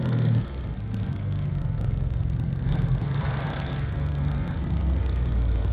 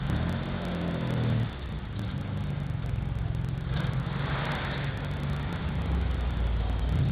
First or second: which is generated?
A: first